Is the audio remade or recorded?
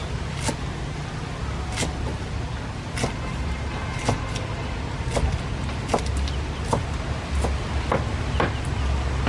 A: recorded